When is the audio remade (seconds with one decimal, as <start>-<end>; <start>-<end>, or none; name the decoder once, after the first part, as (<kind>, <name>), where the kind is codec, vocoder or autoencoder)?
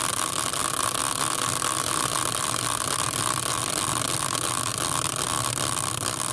none